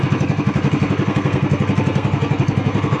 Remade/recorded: remade